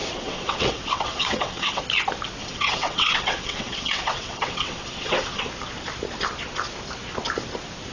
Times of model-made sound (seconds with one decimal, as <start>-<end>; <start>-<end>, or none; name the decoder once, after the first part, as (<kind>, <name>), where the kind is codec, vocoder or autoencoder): 0.0-1.8 (vocoder, WaveNeXt); 2.4-5.5